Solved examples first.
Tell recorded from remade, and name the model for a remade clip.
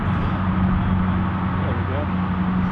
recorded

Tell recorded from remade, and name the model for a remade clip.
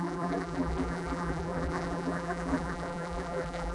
remade, vocoder, BigVGAN v2